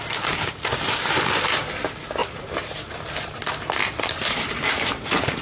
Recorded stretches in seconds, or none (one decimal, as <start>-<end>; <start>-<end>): 0.0-2.2; 3.4-3.8